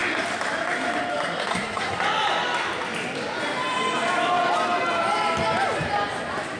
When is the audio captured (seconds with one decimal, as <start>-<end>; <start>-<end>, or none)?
0.0-1.5; 2.0-6.6